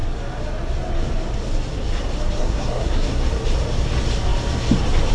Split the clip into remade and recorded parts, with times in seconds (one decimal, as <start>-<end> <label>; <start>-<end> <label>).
0.0-2.4 recorded; 2.4-3.2 remade; 3.2-5.1 recorded